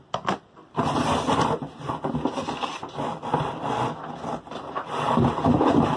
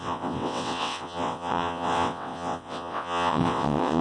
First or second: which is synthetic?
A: second